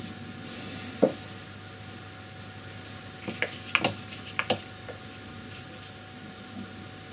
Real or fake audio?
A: real